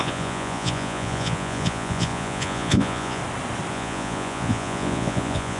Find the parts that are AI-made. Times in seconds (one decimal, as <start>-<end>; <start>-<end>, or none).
0.0-3.2; 3.7-5.6